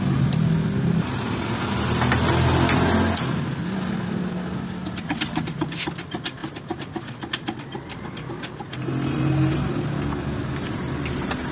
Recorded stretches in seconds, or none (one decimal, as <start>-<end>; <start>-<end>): 0.0-11.5